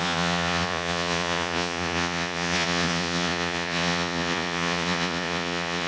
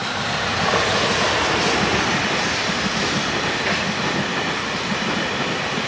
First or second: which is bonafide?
second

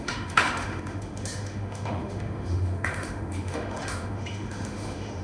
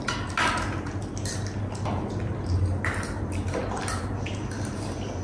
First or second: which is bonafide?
second